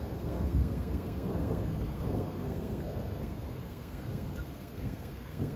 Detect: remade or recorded remade